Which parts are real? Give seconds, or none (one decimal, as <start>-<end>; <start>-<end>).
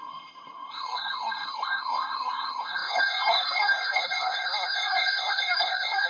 none